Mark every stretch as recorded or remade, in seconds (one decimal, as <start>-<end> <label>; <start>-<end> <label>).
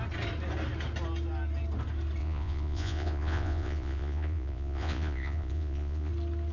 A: 0.0-2.2 recorded; 2.2-6.1 remade; 6.1-6.5 recorded